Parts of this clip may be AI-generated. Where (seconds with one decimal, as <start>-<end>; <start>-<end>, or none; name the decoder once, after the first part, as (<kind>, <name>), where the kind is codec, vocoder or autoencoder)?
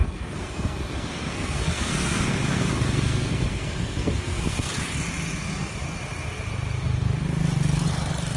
0.0-4.9 (codec, SNAC)